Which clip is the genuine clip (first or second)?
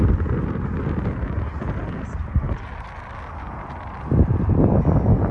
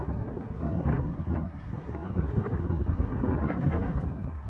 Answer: first